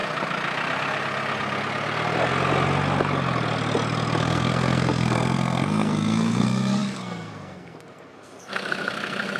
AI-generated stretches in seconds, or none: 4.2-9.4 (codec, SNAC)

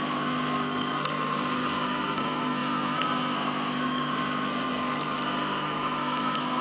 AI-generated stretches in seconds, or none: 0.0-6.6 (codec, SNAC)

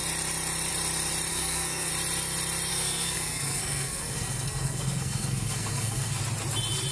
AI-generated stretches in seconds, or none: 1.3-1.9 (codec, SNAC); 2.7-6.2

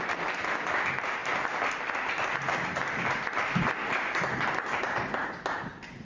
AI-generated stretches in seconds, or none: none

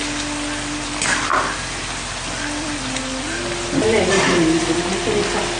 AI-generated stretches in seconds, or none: none

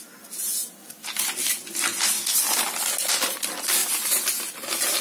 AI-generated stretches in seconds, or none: none

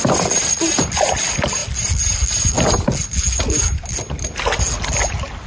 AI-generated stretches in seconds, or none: none